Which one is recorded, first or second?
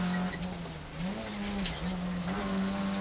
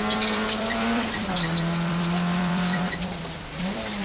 first